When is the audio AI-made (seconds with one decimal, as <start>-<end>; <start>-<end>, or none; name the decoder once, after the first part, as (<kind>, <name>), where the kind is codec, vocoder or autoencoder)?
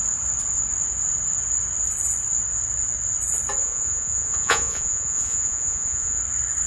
3.6-6.2 (vocoder, Vocos)